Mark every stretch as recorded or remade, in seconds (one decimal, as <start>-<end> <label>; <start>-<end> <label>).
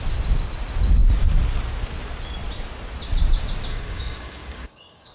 0.0-3.7 recorded; 3.7-5.1 remade